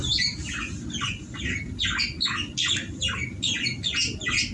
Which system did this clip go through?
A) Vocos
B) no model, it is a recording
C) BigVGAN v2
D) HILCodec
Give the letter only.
B